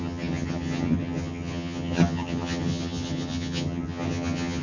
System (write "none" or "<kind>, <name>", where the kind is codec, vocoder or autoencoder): vocoder, HiFi-GAN